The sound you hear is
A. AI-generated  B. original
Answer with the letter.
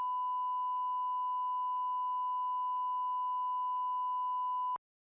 B